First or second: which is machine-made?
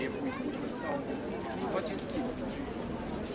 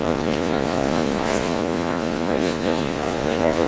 second